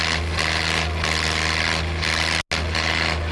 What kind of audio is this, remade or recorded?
recorded